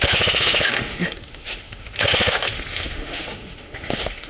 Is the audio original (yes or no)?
no